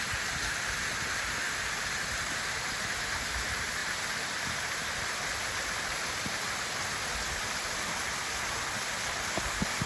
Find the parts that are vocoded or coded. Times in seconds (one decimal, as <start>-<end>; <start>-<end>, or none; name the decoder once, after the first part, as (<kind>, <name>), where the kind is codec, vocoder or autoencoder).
none